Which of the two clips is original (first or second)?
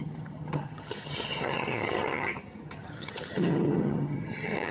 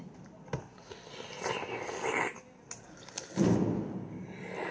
second